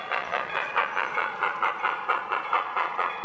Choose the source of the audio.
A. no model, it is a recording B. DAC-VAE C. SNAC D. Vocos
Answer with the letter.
D